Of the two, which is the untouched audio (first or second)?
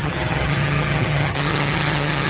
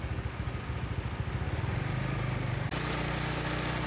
second